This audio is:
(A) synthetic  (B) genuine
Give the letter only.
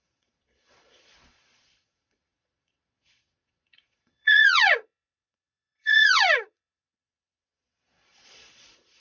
A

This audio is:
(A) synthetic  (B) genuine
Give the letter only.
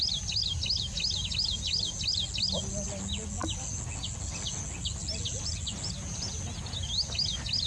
B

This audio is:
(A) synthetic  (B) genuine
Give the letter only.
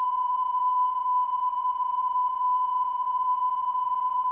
A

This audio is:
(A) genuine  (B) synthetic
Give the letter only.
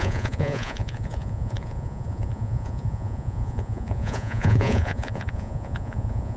B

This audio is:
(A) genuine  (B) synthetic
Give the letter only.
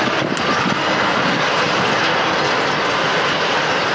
A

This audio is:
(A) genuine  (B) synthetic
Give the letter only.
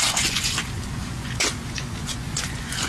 B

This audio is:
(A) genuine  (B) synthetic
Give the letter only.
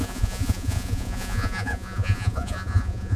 B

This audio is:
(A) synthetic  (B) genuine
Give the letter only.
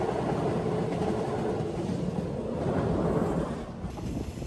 B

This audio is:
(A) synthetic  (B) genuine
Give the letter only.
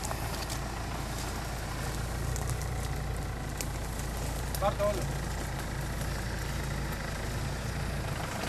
B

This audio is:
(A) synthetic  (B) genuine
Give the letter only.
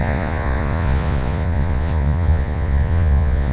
A